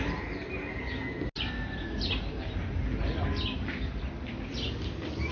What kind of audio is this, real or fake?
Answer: real